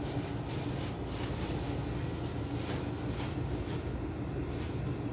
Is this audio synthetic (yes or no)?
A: no